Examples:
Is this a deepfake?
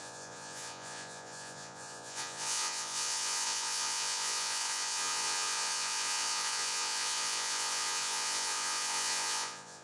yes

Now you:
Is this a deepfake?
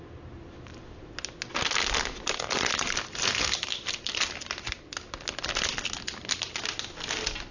no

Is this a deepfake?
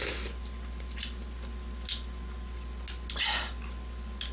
no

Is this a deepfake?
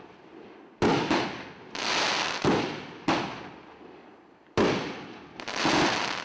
no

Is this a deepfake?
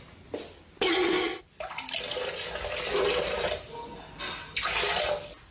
no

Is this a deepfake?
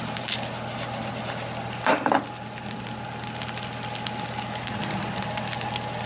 no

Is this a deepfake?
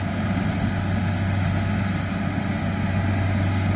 no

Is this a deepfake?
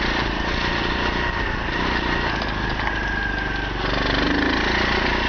no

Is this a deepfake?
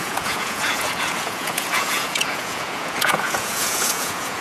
yes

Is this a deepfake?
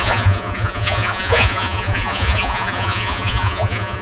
yes